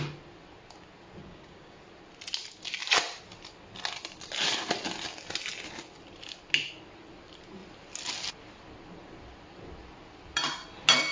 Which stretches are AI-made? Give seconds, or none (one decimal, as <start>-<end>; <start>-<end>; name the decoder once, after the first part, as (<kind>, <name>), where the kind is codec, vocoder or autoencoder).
1.2-1.8 (codec, DAC)